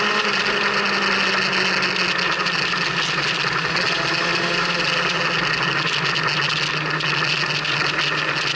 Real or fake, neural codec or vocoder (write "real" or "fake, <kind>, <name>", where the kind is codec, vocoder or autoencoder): real